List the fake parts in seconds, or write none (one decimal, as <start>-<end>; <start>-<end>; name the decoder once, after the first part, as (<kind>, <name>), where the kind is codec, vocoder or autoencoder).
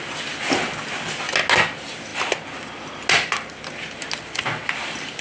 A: none